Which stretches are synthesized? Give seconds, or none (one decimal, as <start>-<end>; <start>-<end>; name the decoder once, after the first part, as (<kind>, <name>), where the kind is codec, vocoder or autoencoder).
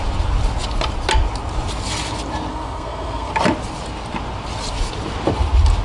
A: 2.5-3.3 (codec, SNAC)